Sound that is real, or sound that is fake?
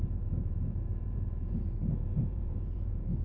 fake